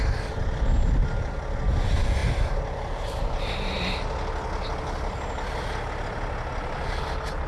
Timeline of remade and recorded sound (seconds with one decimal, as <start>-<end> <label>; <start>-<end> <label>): 0.0-7.5 recorded